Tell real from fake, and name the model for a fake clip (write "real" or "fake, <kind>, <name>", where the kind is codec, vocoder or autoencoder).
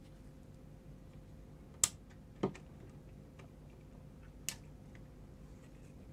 real